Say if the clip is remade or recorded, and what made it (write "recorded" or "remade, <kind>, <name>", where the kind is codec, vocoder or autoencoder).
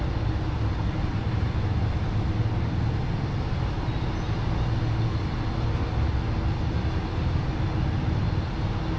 recorded